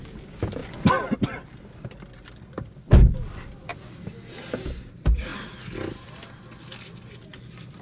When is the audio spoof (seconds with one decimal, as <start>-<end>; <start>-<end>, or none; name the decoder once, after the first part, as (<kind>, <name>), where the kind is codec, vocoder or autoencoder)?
none